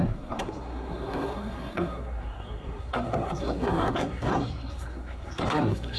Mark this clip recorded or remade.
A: remade